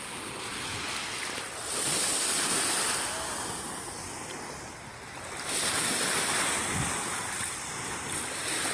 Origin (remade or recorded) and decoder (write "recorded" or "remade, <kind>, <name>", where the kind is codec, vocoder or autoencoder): recorded